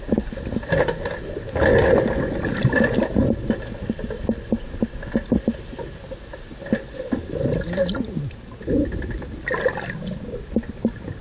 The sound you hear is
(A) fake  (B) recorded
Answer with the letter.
B